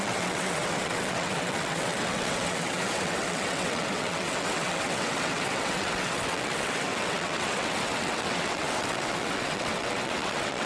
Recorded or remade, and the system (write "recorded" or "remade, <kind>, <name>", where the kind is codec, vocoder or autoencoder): remade, vocoder, WaveNeXt